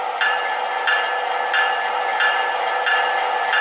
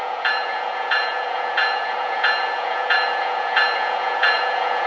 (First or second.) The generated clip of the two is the second